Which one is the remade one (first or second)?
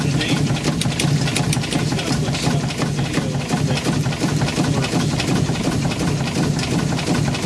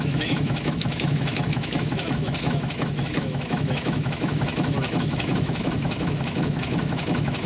second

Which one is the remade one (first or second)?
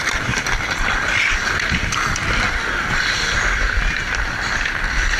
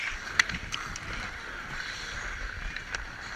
second